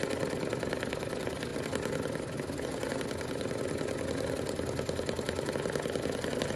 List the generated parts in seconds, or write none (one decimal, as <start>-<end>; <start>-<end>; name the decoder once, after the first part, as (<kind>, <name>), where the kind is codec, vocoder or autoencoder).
none